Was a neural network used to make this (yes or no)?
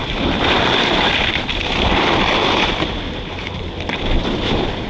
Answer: no